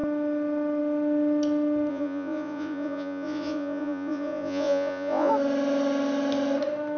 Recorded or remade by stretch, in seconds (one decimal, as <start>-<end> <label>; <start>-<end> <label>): 0.0-1.9 recorded; 1.9-5.3 remade; 5.3-7.0 recorded

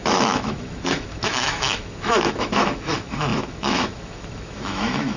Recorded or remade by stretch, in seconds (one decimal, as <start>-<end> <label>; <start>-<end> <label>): 0.0-5.2 remade

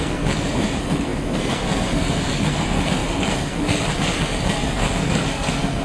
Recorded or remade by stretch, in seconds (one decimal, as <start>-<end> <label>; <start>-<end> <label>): 0.0-5.8 remade

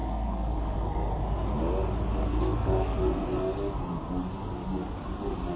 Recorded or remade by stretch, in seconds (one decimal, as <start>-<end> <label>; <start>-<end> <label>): 0.0-1.1 remade; 1.1-2.2 recorded; 2.2-3.0 remade; 3.0-5.6 recorded

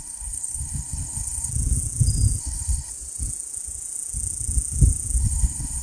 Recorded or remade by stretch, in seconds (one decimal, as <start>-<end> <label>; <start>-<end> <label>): 0.0-1.5 remade; 1.5-2.4 recorded; 2.4-2.9 remade; 2.9-5.2 recorded; 5.2-5.8 remade